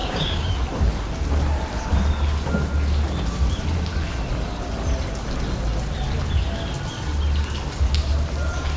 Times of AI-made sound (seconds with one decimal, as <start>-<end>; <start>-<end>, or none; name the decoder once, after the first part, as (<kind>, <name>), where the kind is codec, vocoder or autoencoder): 0.0-0.5 (codec, DAC)